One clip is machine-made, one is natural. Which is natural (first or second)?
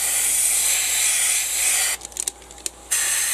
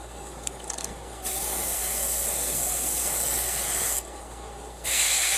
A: first